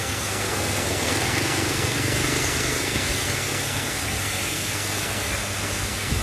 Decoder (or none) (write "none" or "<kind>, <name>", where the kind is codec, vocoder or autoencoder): codec, SNAC